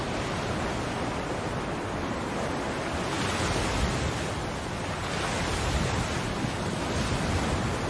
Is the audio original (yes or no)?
yes